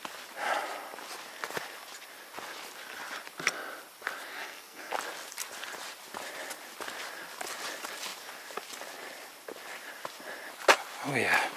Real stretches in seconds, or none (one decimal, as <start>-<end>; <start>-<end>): 0.0-4.3; 4.9-11.6

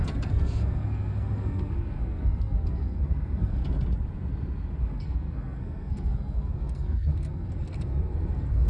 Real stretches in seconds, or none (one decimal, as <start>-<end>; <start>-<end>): 3.6-4.8